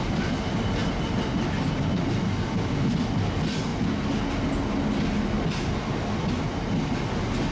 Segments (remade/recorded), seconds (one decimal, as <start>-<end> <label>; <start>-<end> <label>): 0.0-7.5 recorded